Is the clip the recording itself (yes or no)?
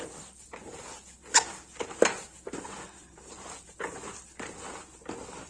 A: yes